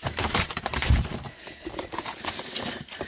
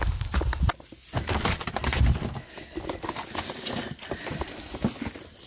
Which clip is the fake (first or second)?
first